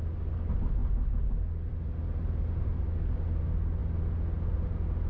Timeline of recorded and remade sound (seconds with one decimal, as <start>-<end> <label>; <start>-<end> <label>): 0.0-5.1 recorded